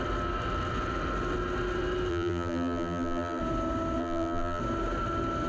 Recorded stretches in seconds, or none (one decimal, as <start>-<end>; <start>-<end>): 0.0-2.1; 3.4-4.0; 4.6-5.5